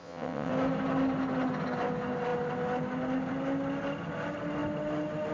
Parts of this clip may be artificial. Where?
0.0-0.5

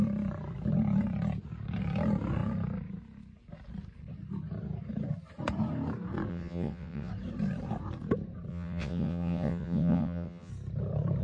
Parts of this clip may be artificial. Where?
6.3-7.1; 8.5-10.5

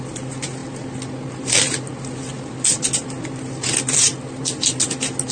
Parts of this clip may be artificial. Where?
none